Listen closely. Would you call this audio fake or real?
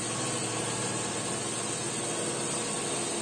real